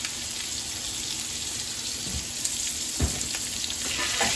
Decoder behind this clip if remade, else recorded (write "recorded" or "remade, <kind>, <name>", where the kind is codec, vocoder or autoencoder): recorded